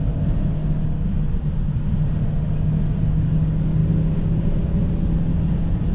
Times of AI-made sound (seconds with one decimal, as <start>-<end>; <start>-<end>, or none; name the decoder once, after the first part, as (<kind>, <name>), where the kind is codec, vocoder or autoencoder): none